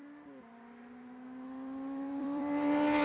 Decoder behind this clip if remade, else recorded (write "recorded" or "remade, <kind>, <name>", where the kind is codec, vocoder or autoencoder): remade, vocoder, BigVGAN v2